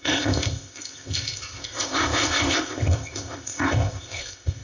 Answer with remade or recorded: remade